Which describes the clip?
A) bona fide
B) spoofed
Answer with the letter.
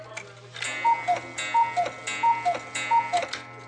A